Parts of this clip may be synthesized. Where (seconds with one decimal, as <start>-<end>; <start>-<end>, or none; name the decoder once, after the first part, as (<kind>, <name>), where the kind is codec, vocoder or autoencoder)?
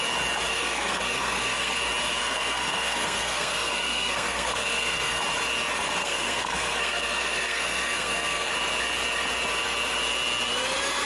0.5-1.8 (codec, SNAC); 2.2-5.2; 6.0-8.5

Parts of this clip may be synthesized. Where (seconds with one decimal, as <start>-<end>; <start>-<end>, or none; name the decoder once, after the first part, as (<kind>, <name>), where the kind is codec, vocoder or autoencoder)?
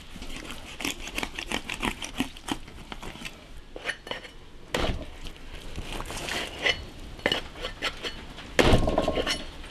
none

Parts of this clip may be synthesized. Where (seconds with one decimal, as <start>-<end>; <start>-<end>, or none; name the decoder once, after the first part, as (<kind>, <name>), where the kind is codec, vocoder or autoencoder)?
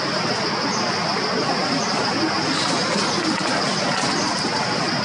none